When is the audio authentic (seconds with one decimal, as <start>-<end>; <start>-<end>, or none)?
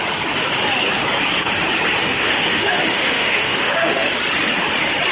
0.0-2.0; 4.1-5.1